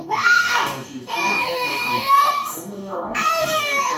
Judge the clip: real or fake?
fake